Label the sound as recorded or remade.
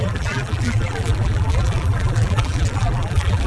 remade